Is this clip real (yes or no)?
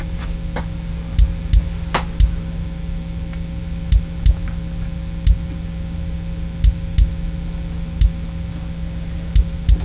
yes